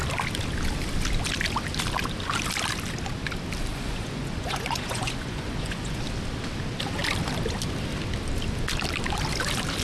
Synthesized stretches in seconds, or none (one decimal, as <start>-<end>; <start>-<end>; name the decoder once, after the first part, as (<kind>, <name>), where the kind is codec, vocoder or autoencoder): 3.7-6.0 (vocoder, Vocos)